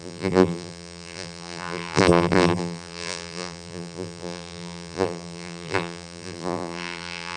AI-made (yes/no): yes